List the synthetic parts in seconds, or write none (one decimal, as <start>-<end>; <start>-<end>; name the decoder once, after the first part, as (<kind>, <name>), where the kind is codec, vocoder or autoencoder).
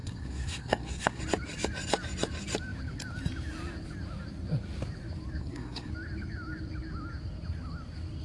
0.0-1.2 (codec, SNAC); 5.4-5.9